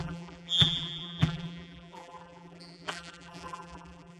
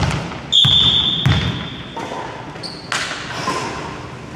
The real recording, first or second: second